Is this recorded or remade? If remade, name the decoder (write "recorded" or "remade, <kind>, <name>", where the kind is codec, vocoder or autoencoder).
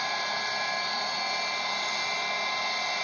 recorded